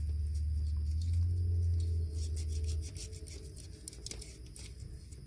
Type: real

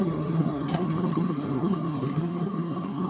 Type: fake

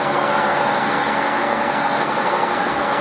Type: fake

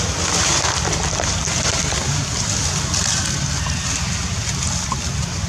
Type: real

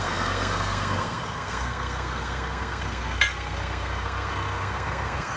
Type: fake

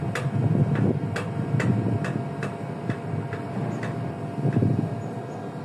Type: real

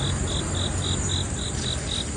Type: real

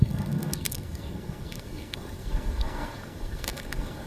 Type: fake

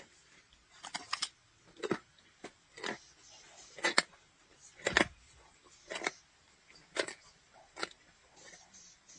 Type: real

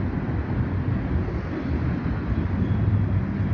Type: real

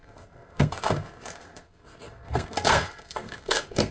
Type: fake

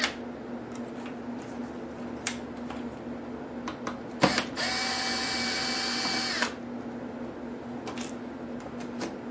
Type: real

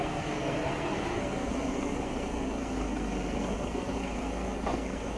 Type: fake